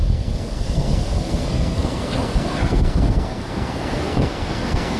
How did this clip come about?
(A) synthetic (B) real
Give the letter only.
A